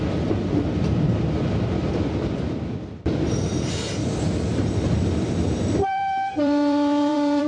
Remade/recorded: remade